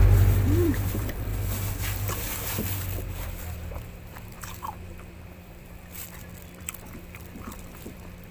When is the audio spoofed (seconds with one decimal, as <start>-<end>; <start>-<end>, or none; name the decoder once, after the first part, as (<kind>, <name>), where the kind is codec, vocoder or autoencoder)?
0.0-1.3 (vocoder, BigVGAN v2); 3.0-6.0; 6.6-8.3